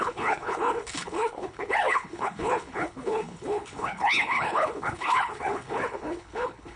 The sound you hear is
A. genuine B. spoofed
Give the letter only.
B